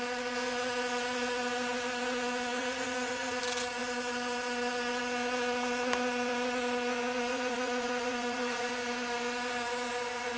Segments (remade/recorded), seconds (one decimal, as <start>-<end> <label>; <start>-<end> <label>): 0.0-2.6 recorded; 2.6-3.4 remade; 3.4-7.3 recorded; 7.3-8.7 remade; 8.7-10.4 recorded